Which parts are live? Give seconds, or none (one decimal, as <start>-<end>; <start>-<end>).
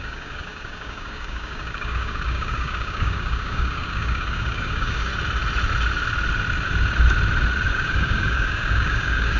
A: 5.1-7.7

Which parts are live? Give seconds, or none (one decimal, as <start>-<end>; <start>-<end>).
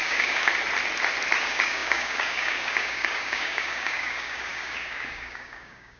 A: 0.5-1.4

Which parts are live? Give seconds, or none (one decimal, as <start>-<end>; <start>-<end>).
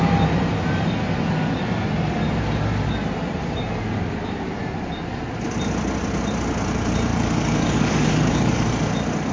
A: 0.0-7.1; 8.7-9.3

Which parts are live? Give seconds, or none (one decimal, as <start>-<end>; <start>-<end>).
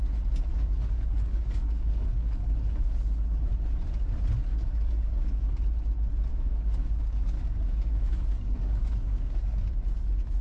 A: 0.0-0.5; 2.9-4.5; 5.5-6.3; 9.7-10.4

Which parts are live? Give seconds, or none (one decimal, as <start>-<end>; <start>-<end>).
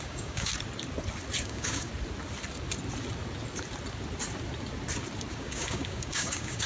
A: 0.5-1.4; 1.9-5.3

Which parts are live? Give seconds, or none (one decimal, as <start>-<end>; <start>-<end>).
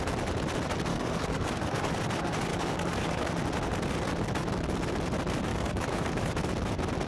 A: 0.0-0.9; 1.9-2.5; 3.3-5.5; 6.3-7.1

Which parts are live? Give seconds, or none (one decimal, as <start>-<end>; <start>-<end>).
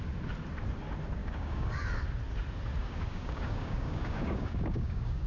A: 0.0-1.2; 1.8-2.8